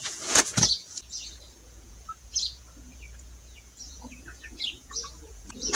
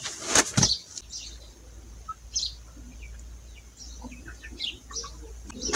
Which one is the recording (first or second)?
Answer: second